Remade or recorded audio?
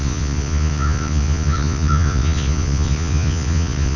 remade